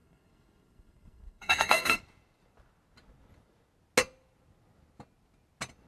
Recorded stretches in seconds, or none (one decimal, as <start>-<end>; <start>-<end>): 2.0-5.9